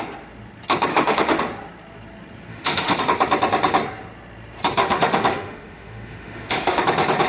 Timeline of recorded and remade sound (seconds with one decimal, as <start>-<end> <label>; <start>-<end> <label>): 0.0-0.9 recorded; 0.9-1.4 remade; 1.4-2.5 recorded; 2.5-3.0 remade; 3.0-4.8 recorded; 4.8-6.8 remade; 6.8-7.3 recorded